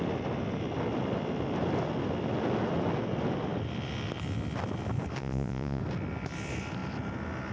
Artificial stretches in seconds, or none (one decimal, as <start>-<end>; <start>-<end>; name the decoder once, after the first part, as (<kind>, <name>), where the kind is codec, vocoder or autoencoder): 5.2-5.8 (vocoder, Vocos)

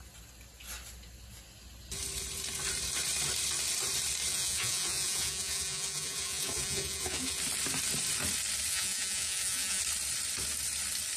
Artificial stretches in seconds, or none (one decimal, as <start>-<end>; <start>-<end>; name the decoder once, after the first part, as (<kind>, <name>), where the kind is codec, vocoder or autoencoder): 4.3-7.4 (vocoder, Vocos); 8.7-9.8

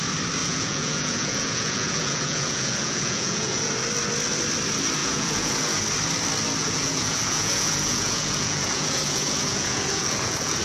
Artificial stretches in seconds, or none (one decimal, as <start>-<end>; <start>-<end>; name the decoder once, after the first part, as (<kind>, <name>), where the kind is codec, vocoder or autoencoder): 0.4-3.7 (vocoder, Vocos); 5.0-5.8; 6.6-10.6

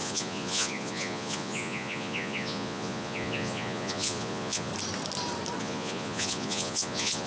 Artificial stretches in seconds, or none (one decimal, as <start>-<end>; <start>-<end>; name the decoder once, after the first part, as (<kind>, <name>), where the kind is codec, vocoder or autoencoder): 0.0-4.7 (vocoder, Vocos); 5.6-7.3

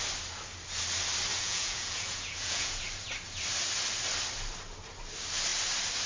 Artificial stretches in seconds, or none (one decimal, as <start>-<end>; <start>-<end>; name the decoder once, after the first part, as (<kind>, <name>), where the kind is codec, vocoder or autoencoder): 1.3-2.8 (vocoder, Vocos)

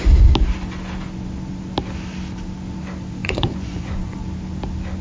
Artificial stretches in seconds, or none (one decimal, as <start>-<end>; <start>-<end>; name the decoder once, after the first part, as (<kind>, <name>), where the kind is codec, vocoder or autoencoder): 3.2-4.2 (vocoder, Vocos)

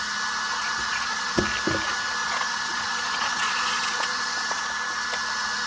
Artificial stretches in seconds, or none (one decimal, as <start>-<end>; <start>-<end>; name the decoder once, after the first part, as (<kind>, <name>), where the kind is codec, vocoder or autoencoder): 0.5-1.4 (vocoder, Vocos); 2.2-4.6